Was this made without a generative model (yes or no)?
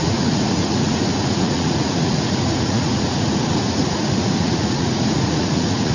no